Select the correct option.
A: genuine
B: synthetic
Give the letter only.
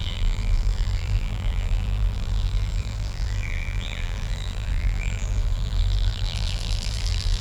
B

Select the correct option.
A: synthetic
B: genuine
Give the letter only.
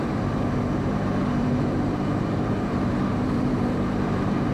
A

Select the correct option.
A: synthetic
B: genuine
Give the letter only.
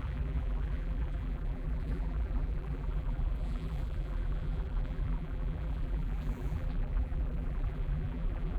A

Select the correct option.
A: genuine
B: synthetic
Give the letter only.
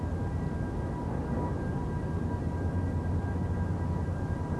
A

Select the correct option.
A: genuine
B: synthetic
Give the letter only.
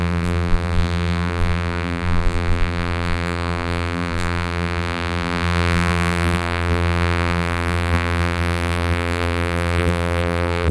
B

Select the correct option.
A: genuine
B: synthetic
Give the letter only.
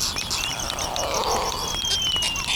A